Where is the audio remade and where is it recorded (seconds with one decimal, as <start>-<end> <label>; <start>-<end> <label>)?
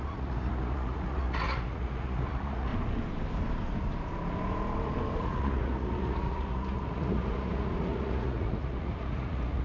0.0-2.7 remade; 2.7-5.2 recorded; 5.2-9.6 remade